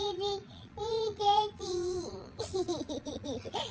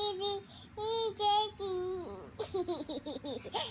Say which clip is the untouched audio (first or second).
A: second